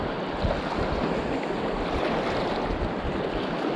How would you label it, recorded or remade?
recorded